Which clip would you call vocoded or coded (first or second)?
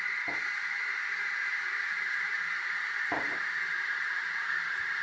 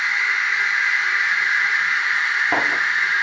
first